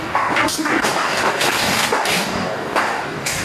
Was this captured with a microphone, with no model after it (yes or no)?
no